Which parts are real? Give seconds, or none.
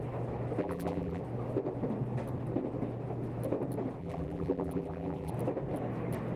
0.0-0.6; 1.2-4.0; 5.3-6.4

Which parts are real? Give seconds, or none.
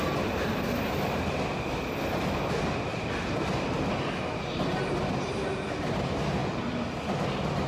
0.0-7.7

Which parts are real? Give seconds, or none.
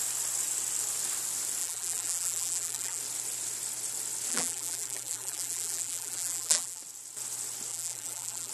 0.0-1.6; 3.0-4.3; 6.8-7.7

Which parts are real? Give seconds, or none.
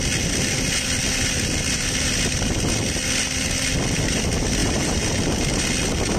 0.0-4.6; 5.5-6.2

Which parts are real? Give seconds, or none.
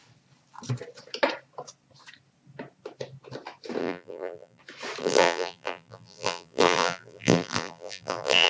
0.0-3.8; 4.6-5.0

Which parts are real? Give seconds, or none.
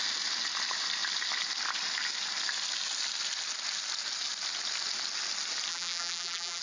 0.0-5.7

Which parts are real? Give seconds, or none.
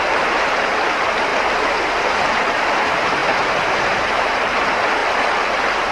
1.3-2.0; 5.0-5.9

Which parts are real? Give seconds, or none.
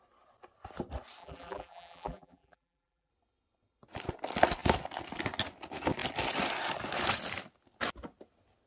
0.0-1.2; 3.1-8.7